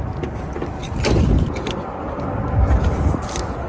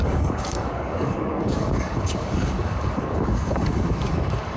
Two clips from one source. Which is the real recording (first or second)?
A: first